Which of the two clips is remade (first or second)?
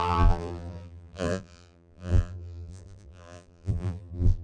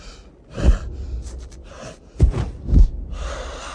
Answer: first